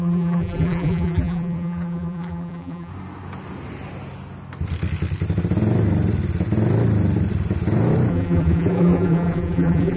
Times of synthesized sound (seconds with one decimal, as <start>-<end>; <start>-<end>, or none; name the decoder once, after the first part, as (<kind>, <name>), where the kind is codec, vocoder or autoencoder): 0.0-2.9 (vocoder, BigVGAN v2); 8.1-10.0